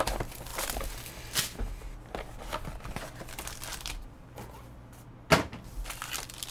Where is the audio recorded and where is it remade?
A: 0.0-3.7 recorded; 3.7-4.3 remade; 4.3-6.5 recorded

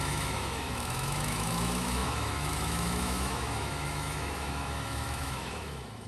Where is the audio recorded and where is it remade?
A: 0.0-6.1 remade

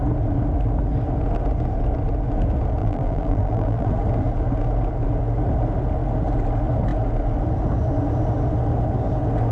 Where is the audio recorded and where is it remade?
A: 0.0-2.8 recorded; 2.8-3.9 remade; 3.9-9.5 recorded

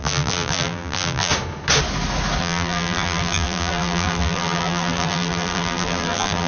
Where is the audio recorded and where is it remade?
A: 0.0-1.3 remade; 1.3-2.4 recorded; 2.4-6.5 remade